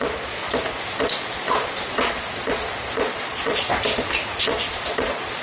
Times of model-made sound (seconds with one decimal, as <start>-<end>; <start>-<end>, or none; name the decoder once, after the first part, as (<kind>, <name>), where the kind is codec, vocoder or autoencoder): 0.0-0.4 (vocoder, Vocos); 0.9-3.7; 4.4-5.4